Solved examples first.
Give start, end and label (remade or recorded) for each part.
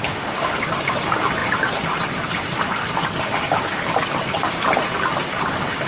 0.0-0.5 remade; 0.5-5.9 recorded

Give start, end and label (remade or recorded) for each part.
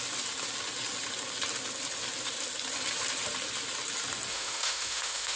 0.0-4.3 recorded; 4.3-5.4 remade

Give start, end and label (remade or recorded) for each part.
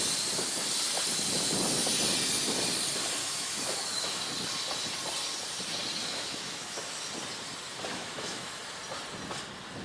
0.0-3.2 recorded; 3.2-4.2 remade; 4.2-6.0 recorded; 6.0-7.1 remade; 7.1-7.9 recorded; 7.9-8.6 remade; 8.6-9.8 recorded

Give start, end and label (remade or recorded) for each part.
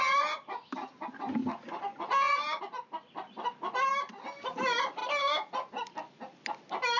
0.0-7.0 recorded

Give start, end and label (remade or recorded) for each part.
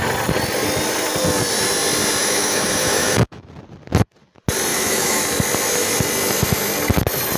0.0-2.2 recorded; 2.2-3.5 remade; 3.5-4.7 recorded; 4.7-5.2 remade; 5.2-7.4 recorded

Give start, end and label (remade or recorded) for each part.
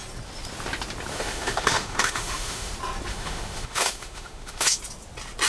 0.0-1.1 recorded; 1.1-2.7 remade; 2.7-3.1 recorded; 3.1-4.8 remade; 4.8-5.5 recorded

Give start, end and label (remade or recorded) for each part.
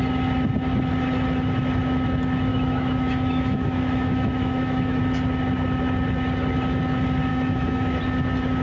0.0-2.5 recorded; 2.5-5.0 remade; 5.0-7.3 recorded; 7.3-8.0 remade; 8.0-8.6 recorded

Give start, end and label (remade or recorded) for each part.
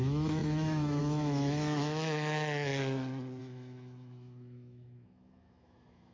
0.0-2.7 remade; 2.7-3.4 recorded; 3.4-6.1 remade